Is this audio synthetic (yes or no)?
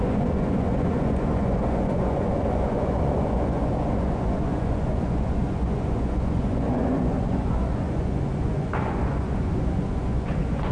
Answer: yes